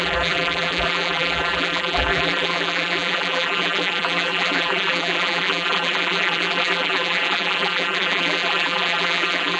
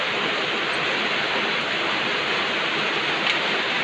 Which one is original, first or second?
second